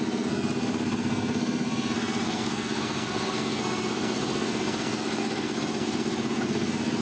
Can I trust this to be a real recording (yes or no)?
no